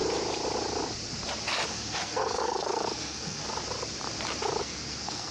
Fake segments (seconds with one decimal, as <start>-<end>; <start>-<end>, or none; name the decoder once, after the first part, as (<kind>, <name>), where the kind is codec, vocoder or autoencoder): 1.7-3.4 (codec, SNAC); 4.6-5.3